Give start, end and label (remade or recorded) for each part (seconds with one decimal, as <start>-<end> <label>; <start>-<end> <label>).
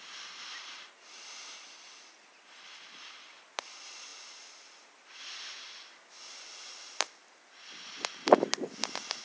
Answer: 0.0-9.2 recorded